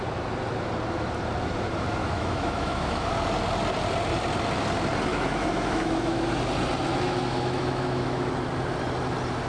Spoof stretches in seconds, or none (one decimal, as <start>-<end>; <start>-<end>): 2.0-3.1; 5.1-6.2; 6.9-8.3